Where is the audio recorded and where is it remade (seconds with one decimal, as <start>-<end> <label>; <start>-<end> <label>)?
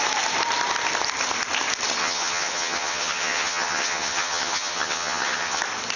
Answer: 0.0-2.0 recorded; 2.0-5.6 remade; 5.6-6.0 recorded